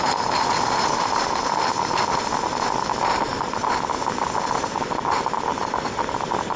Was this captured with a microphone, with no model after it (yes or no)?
yes